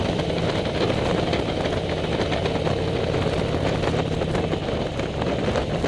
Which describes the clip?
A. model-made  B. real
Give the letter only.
B